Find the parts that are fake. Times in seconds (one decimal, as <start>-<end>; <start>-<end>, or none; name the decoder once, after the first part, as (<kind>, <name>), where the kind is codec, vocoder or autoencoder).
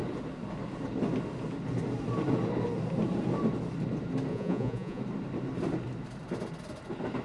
4.3-5.0 (vocoder, Vocos)